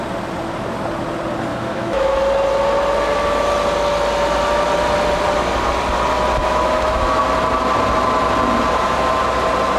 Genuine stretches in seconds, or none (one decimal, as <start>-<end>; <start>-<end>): 0.0-1.5; 2.2-6.4; 7.2-9.8